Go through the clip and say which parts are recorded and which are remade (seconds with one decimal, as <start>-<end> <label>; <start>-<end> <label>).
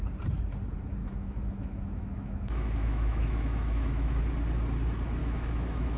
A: 0.0-1.0 recorded; 1.0-4.2 remade; 4.2-5.2 recorded; 5.2-6.0 remade